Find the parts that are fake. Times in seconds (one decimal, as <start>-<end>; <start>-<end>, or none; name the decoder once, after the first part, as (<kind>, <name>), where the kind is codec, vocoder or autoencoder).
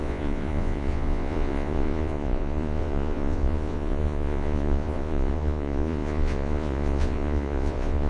0.0-8.1 (vocoder, Vocos)